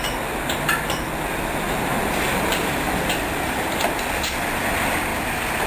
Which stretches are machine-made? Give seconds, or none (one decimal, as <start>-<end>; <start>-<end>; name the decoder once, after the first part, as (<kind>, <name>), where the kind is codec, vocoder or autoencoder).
2.0-3.7 (vocoder, BigVGAN v2)